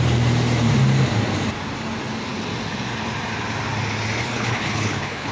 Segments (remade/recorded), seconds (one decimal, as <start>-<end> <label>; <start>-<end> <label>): 0.0-4.2 recorded; 4.2-5.3 remade